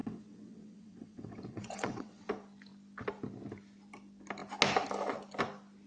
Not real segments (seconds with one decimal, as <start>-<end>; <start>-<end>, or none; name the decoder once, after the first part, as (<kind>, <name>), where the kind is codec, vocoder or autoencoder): 0.0-2.3 (vocoder, WaveNeXt)